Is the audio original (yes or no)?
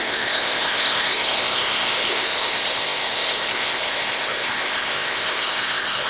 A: no